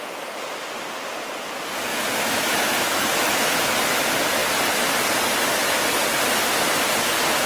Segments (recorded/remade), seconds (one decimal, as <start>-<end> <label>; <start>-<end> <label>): 0.0-1.9 recorded; 1.9-3.7 remade; 3.7-7.5 recorded